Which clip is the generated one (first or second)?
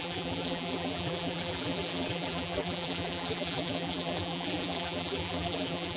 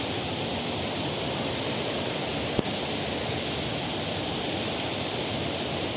first